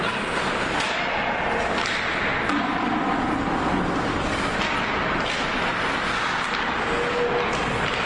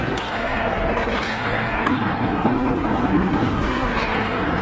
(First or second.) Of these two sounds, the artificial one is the second